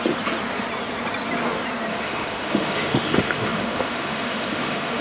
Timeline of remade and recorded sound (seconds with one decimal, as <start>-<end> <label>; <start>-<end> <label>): 0.0-1.9 recorded; 1.9-5.0 remade